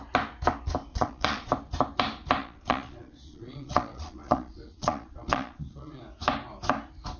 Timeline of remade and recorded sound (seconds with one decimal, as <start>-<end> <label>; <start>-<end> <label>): 0.0-0.9 recorded; 0.9-1.5 remade; 1.5-2.4 recorded; 2.4-6.0 remade; 6.0-7.2 recorded

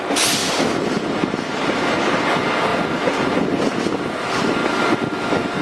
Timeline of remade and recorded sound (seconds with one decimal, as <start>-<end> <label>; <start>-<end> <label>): 0.0-5.6 recorded

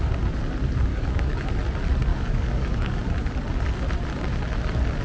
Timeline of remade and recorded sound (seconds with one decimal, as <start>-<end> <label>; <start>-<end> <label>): 0.0-0.9 recorded; 0.9-1.5 remade; 1.5-2.1 recorded; 2.1-3.0 remade; 3.0-5.0 recorded

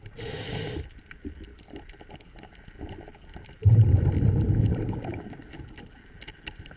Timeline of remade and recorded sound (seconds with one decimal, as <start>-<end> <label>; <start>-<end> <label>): 0.0-6.8 recorded

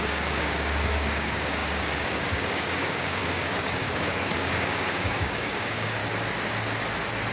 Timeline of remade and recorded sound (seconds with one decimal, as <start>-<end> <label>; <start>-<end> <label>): 0.0-6.0 remade; 6.0-7.3 recorded

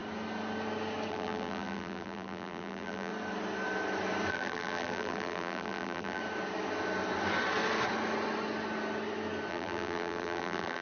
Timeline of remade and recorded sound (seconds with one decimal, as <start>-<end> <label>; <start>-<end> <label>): 0.0-1.1 recorded; 1.1-3.1 remade; 3.1-4.3 recorded; 4.3-6.2 remade; 6.2-9.5 recorded; 9.5-10.8 remade

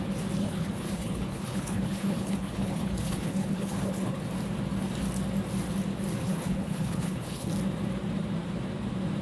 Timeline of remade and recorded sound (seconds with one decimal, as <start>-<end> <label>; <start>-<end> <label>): 0.0-0.4 recorded; 0.4-4.2 remade; 4.2-6.2 recorded; 6.2-7.5 remade; 7.5-9.2 recorded

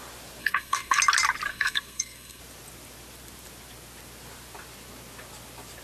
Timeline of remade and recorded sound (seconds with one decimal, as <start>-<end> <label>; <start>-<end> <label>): 0.0-0.4 recorded; 0.4-1.0 remade; 1.0-1.5 recorded; 1.5-2.4 remade; 2.4-5.8 recorded